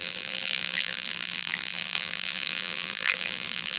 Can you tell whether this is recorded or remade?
remade